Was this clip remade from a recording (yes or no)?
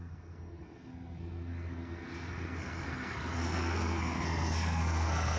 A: yes